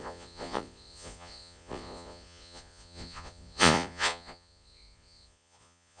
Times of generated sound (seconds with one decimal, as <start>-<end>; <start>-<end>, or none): 0.0-6.0